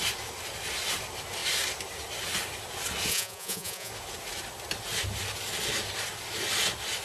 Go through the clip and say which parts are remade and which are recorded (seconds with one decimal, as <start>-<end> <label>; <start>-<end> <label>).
0.0-3.1 recorded; 3.1-3.9 remade; 3.9-7.0 recorded